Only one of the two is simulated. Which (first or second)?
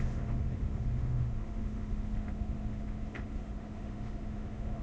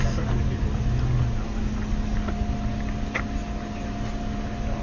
first